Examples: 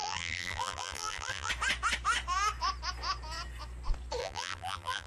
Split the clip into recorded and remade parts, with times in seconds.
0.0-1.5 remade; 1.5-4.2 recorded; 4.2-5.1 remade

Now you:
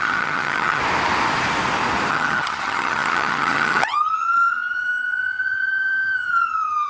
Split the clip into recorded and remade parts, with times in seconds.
0.0-0.8 remade; 0.8-2.1 recorded; 2.1-6.9 remade

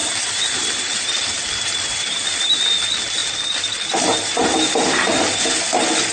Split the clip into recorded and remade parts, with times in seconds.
0.0-6.1 remade

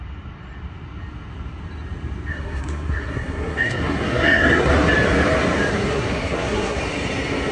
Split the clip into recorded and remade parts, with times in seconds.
0.0-2.3 recorded; 2.3-4.7 remade; 4.7-5.7 recorded; 5.7-6.8 remade; 6.8-7.5 recorded